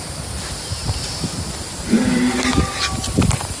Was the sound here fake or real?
real